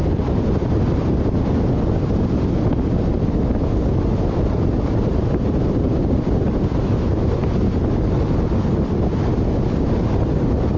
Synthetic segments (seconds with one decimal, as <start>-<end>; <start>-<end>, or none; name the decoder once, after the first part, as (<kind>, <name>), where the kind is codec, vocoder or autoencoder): none